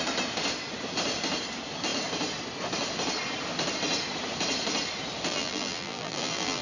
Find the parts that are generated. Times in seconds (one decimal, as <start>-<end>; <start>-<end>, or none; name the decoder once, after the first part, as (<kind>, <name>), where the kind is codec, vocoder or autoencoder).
5.3-6.6 (vocoder, BigVGAN v2)